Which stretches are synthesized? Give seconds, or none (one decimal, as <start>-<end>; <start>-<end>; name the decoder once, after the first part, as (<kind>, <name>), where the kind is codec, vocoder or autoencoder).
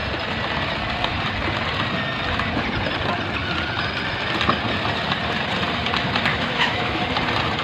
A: 6.3-7.0 (autoencoder, DAC-VAE)